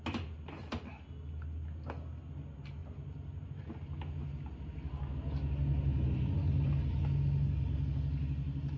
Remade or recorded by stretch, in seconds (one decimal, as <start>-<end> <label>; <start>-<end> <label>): 0.0-8.8 recorded